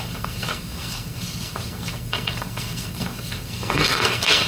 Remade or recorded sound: remade